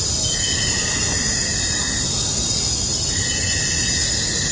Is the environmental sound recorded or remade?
recorded